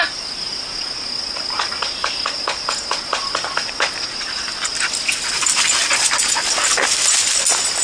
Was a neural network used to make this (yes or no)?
no